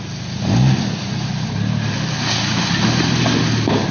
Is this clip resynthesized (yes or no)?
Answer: no